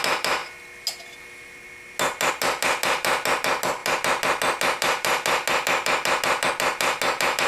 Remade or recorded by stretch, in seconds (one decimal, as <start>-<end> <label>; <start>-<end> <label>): 0.0-7.5 recorded